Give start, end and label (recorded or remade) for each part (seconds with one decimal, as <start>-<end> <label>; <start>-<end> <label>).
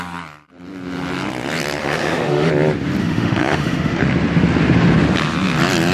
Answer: 0.0-1.8 recorded; 1.8-2.5 remade; 2.5-3.0 recorded; 3.0-4.0 remade; 4.0-5.9 recorded